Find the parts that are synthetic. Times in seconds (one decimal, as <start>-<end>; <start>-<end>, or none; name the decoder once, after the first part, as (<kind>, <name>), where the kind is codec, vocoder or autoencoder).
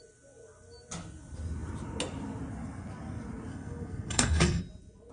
3.5-4.6 (codec, SNAC)